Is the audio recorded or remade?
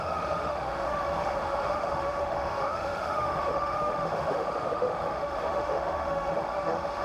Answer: remade